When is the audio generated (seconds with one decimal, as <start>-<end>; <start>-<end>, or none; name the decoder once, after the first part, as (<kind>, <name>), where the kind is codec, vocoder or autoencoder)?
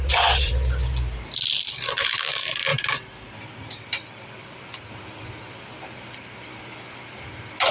0.0-0.5 (vocoder, Vocos)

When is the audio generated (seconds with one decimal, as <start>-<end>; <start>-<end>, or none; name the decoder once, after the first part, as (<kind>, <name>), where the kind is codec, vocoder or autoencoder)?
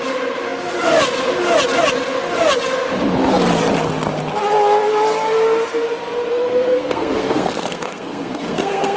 6.3-9.0 (codec, SNAC)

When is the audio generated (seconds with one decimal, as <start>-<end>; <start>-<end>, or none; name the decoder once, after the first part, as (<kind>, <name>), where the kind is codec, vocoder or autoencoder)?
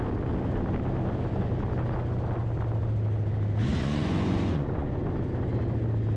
3.7-5.0 (vocoder, Vocos)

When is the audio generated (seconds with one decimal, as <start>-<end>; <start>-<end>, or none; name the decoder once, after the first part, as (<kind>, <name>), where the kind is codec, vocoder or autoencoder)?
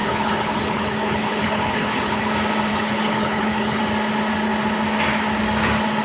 0.0-2.3 (codec, HILCodec); 2.7-3.8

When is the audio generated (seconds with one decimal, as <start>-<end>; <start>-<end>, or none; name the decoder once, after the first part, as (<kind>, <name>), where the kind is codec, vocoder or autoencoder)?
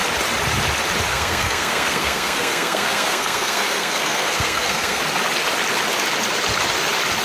1.1-5.0 (codec, SNAC)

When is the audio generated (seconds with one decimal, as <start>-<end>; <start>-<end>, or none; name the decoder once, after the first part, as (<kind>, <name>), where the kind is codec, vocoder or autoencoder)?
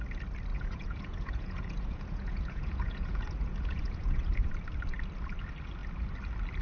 0.5-4.5 (vocoder, Vocos)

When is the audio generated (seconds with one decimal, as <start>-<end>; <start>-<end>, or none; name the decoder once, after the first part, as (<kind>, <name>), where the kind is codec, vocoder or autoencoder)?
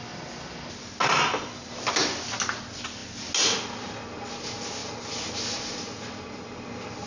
none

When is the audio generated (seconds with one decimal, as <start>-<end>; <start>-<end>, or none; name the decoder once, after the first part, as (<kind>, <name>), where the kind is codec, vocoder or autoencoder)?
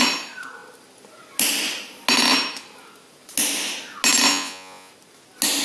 4.3-4.9 (vocoder, Vocos)